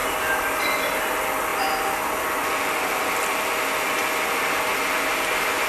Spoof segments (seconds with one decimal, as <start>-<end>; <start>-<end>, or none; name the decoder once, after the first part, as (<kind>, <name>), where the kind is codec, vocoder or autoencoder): none